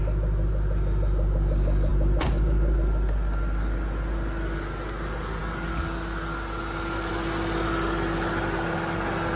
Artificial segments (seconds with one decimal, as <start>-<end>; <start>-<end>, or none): none